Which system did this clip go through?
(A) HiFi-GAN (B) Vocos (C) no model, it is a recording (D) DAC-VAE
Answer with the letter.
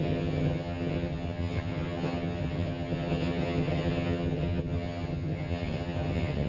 A